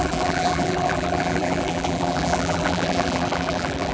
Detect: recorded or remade remade